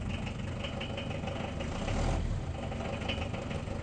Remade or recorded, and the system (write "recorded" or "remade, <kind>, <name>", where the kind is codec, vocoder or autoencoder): recorded